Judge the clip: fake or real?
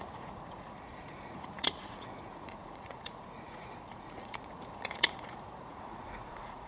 fake